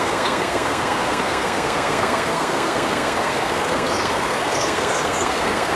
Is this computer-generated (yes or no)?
yes